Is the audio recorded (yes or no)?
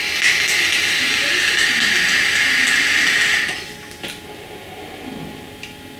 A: yes